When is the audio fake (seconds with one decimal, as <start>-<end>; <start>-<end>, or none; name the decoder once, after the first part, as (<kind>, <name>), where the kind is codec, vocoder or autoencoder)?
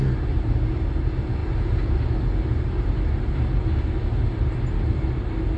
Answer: none